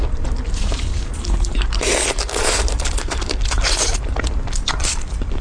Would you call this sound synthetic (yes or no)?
yes